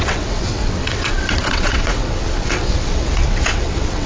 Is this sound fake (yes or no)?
yes